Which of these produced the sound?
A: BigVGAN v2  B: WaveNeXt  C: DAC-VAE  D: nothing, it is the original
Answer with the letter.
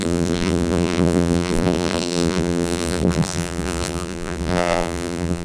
A